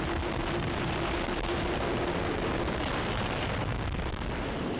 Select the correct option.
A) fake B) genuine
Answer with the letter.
A